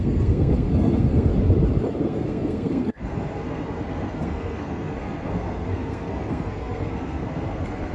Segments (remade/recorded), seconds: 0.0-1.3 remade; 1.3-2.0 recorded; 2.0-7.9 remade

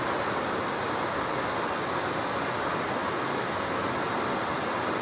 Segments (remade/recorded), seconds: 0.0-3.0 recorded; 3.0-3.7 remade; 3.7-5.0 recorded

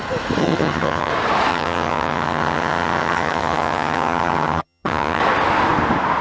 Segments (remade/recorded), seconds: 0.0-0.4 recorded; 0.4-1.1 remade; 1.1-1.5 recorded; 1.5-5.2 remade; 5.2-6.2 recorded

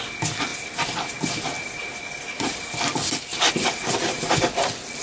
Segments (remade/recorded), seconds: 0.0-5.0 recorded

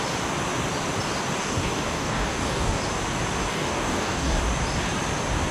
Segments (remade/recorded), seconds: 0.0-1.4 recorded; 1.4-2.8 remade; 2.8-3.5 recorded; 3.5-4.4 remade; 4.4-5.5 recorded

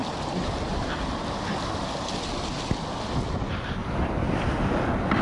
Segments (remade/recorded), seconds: 0.0-3.8 recorded; 3.8-4.5 remade; 4.5-5.2 recorded

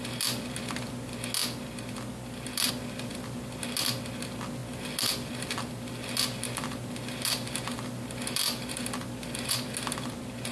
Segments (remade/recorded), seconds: 0.0-1.4 recorded; 1.4-2.7 remade; 2.7-3.1 recorded; 3.1-3.6 remade; 3.6-4.6 recorded; 4.6-9.5 remade; 9.5-10.5 recorded